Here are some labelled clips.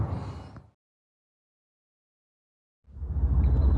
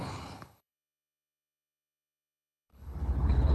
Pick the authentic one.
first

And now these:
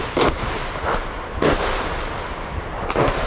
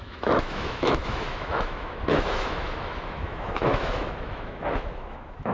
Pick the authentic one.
first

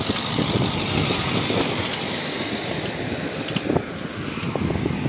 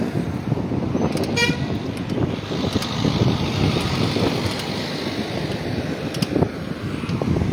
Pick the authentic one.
first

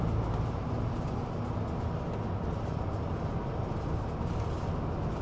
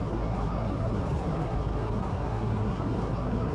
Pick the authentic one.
first